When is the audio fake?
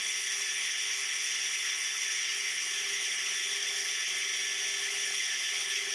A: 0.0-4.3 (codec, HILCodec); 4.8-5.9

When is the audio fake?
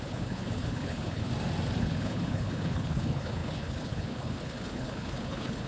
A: 0.0-1.3 (codec, HILCodec); 1.8-5.7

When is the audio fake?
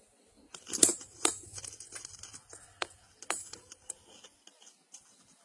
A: none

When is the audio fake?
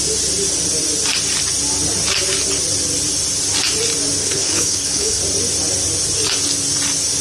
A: 4.2-5.2 (codec, HILCodec)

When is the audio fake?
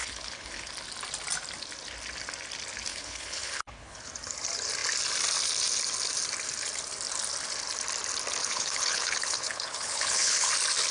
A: 0.0-0.7 (codec, HILCodec); 2.9-4.1; 8.4-10.5